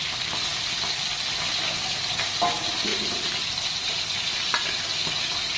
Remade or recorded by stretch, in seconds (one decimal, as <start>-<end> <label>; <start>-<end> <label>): 0.0-2.9 recorded; 2.9-4.0 remade; 4.0-5.6 recorded